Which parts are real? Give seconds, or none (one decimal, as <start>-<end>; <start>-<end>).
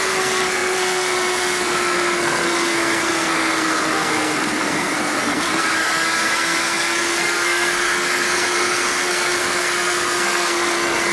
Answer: none